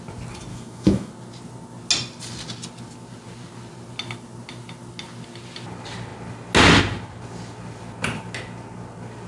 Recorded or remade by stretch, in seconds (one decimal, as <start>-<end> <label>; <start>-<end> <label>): 0.0-0.5 recorded; 0.5-1.1 remade; 1.1-9.3 recorded